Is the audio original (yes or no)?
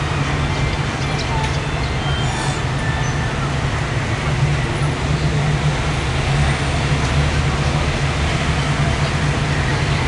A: yes